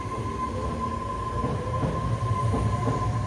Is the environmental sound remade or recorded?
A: recorded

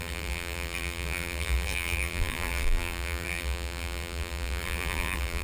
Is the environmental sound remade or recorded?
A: remade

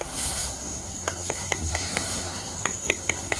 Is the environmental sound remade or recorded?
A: remade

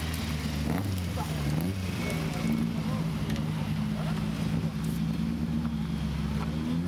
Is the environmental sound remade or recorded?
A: recorded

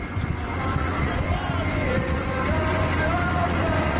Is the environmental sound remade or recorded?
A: remade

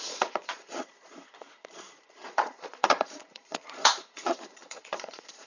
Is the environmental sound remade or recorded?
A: remade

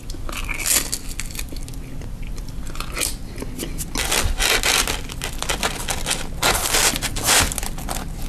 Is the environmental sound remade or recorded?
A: recorded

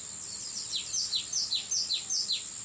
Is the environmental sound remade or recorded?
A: recorded